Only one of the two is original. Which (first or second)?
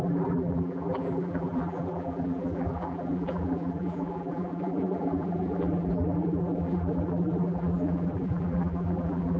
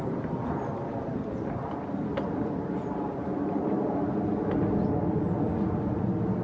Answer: second